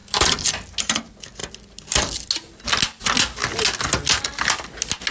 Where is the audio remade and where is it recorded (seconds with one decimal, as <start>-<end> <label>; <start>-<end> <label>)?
0.0-5.1 recorded